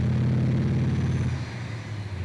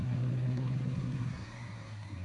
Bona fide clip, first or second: first